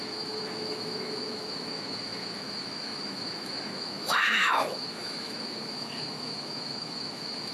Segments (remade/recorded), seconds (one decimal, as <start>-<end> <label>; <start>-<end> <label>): 0.0-7.5 remade